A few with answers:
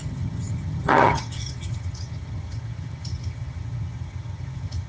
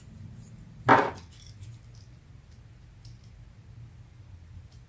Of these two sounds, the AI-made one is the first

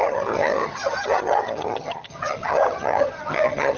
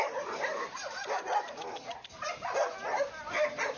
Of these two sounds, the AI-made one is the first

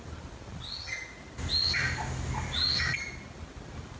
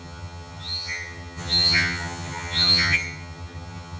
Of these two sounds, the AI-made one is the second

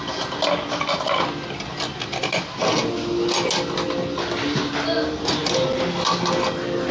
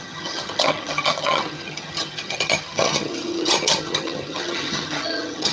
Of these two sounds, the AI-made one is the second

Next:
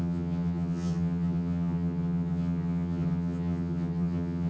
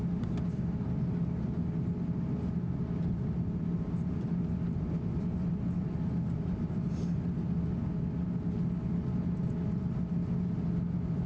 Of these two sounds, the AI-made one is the first